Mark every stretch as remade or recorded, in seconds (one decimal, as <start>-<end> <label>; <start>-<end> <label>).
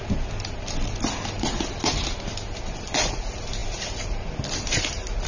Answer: 0.0-5.3 recorded